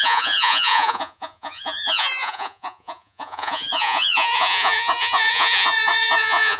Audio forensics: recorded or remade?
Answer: remade